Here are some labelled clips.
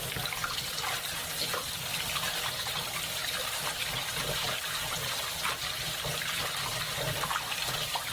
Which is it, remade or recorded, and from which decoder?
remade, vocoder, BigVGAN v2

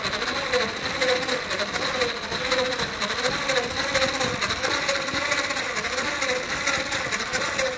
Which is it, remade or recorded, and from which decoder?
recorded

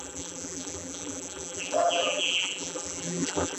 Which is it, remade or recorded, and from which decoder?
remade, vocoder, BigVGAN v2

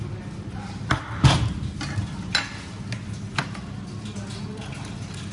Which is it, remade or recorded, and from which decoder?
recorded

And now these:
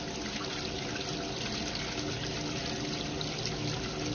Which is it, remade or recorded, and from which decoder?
recorded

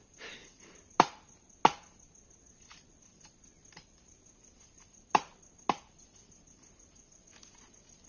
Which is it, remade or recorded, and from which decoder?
recorded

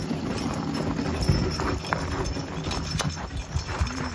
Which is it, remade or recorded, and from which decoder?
recorded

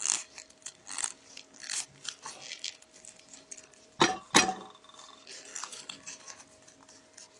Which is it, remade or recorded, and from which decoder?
recorded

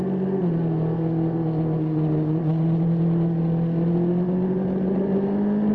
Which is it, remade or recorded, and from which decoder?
recorded